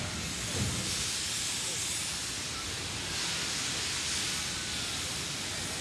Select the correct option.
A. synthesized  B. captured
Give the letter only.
B